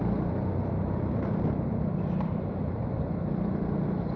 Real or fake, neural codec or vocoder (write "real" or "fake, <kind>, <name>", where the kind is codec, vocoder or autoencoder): fake, vocoder, BigVGAN v2